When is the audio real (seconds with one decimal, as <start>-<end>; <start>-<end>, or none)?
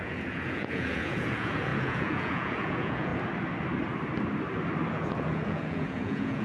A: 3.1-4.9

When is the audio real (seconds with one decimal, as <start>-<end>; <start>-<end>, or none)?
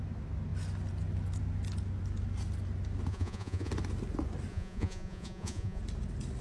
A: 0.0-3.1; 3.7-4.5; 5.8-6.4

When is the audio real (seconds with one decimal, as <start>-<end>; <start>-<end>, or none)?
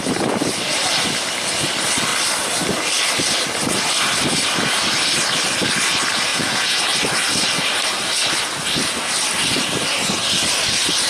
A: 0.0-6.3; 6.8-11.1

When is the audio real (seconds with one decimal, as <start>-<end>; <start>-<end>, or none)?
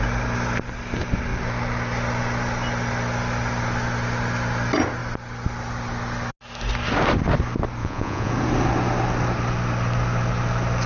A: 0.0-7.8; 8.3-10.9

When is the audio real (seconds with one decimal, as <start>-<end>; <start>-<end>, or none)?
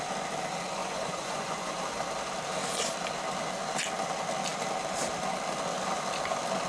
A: 0.0-0.8; 1.8-6.7